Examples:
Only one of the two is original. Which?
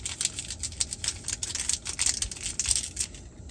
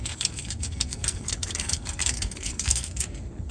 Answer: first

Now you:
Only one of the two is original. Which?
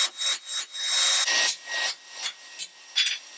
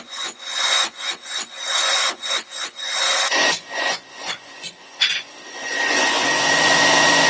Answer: first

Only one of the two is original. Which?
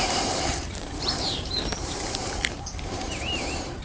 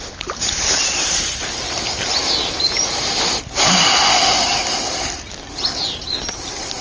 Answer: second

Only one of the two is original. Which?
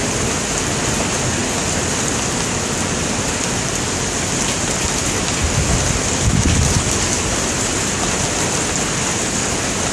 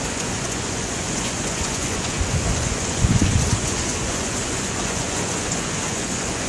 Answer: first